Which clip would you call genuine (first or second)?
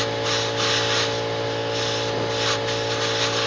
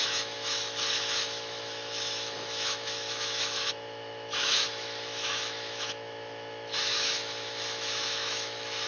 first